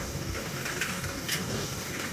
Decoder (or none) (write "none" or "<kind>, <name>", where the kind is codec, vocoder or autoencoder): codec, DAC